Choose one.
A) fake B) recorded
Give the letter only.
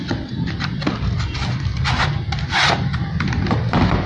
B